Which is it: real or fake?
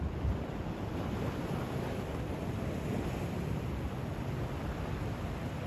fake